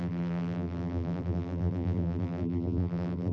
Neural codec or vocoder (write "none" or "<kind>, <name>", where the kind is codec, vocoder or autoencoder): vocoder, BigVGAN v2